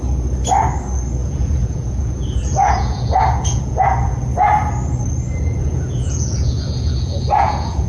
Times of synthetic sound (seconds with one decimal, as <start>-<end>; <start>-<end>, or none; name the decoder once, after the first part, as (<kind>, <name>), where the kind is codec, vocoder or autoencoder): 1.2-3.8 (vocoder, Vocos); 5.6-7.9